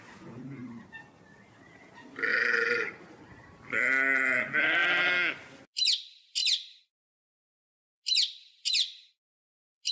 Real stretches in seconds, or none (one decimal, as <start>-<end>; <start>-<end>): 0.0-2.3; 3.7-9.9